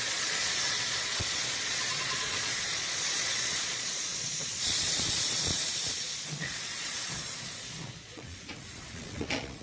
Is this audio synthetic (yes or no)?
yes